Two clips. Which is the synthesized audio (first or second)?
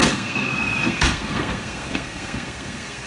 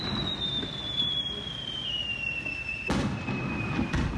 first